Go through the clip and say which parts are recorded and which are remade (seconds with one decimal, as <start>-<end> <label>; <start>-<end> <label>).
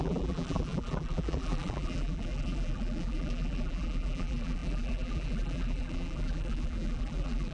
0.0-7.5 remade